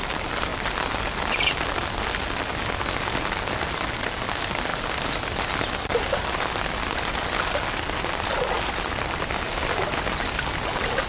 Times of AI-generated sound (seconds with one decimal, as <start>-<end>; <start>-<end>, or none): none